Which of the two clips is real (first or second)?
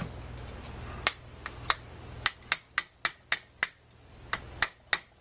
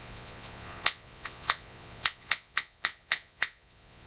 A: first